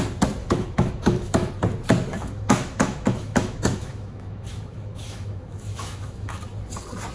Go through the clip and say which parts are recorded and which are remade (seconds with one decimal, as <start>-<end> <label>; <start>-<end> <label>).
0.0-0.4 recorded; 0.4-1.5 remade; 1.5-2.1 recorded; 2.1-6.4 remade; 6.4-7.1 recorded